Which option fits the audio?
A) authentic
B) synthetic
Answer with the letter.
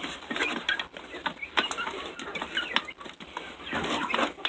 A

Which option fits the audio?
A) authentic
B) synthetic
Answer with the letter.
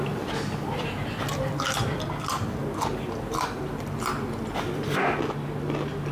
A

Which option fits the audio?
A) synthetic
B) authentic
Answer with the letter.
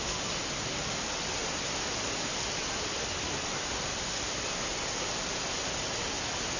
B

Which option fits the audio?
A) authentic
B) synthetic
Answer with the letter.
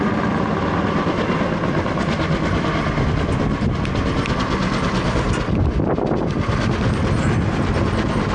A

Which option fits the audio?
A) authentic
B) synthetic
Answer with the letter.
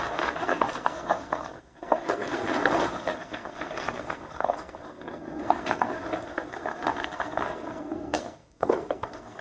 B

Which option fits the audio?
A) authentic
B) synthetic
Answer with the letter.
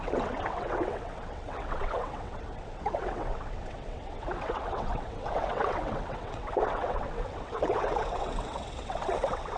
B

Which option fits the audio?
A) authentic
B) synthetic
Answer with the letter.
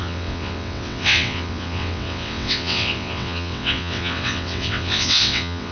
B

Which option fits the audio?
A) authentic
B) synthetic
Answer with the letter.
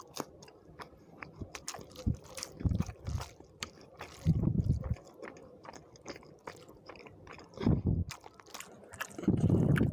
B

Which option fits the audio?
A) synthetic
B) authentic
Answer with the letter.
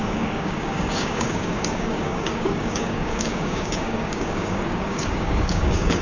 A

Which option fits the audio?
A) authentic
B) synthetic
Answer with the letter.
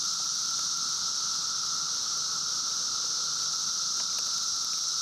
A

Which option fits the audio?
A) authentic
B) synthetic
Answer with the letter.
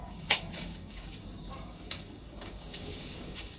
B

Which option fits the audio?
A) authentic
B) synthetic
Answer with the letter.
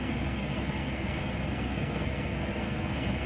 B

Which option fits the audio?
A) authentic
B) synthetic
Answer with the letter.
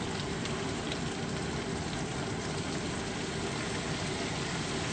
A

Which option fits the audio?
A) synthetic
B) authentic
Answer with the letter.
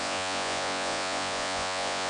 A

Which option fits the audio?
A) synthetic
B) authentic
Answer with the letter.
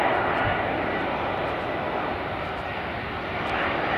B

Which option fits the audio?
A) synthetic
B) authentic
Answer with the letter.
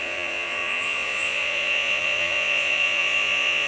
A